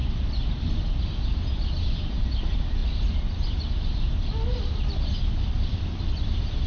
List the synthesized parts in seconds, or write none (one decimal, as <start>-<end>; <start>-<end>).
none